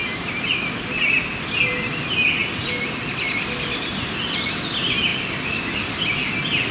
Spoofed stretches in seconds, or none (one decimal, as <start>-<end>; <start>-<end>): none